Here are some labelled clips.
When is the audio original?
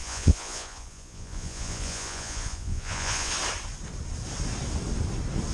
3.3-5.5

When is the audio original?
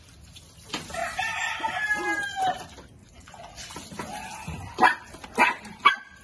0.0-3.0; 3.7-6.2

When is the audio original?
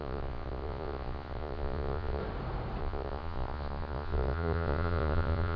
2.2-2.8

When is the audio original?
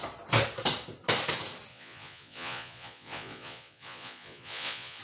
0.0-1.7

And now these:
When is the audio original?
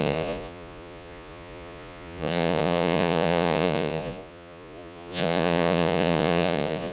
none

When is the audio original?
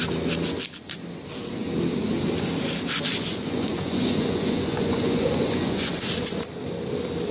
0.0-3.1; 6.0-7.3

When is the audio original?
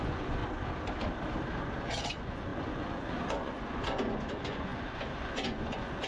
0.4-1.6